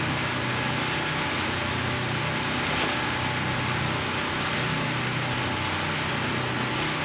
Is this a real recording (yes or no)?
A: yes